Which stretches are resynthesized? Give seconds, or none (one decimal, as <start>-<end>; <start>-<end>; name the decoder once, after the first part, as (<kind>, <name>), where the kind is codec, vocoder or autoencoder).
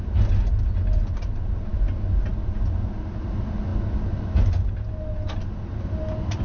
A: none